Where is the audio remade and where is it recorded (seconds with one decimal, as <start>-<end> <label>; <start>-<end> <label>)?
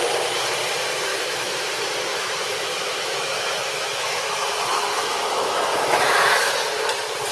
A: 0.0-1.1 recorded; 1.1-1.7 remade; 1.7-2.1 recorded; 2.1-6.5 remade; 6.5-7.3 recorded